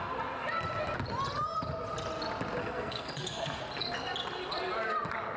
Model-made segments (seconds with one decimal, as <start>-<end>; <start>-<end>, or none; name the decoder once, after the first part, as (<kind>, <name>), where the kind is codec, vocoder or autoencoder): 2.6-3.6 (codec, SNAC)